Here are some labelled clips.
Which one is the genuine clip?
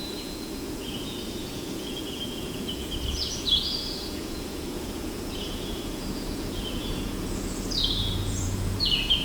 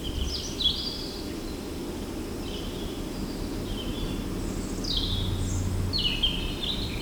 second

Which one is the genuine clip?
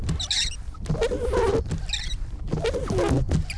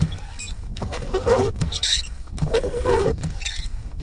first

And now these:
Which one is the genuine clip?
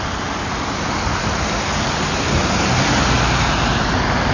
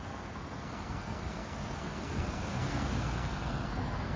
first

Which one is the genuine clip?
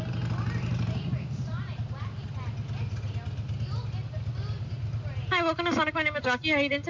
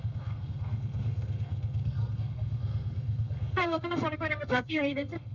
first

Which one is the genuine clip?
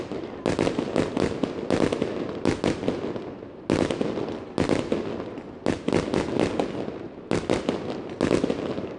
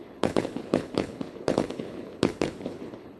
first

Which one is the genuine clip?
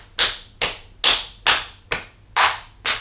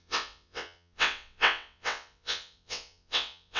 first